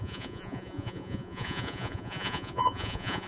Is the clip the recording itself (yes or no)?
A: no